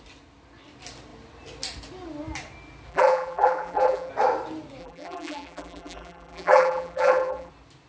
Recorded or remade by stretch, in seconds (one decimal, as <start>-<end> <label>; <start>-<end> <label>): 0.0-2.9 recorded; 2.9-4.1 remade; 4.1-4.8 recorded; 4.8-7.5 remade; 7.5-7.9 recorded